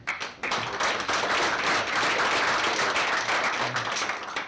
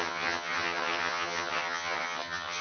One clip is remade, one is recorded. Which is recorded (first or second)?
first